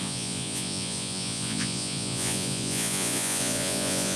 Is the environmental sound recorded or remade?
remade